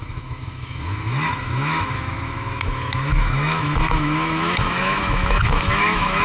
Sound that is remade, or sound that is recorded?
remade